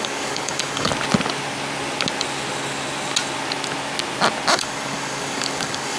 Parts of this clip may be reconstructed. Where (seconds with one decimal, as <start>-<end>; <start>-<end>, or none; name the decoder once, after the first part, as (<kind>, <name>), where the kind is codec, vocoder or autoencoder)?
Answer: 0.0-0.9 (codec, DAC); 4.5-6.0